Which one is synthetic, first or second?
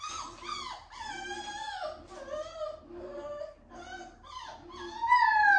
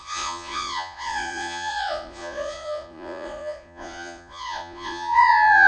second